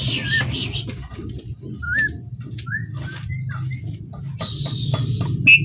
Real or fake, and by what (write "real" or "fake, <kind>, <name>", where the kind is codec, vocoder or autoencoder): real